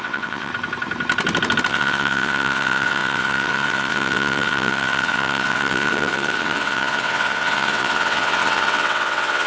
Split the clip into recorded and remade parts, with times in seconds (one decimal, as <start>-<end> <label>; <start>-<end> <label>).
0.0-0.5 remade; 0.5-1.7 recorded; 1.7-9.5 remade